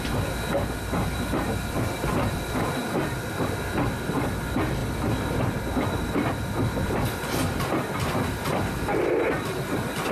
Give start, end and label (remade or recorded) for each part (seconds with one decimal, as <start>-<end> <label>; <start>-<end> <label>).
0.0-10.1 recorded